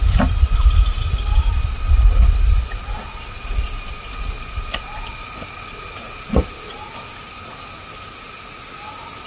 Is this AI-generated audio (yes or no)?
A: no